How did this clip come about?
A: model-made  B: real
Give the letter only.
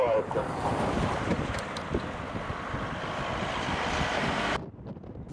A